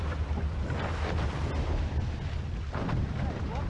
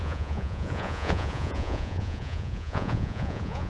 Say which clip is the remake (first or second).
second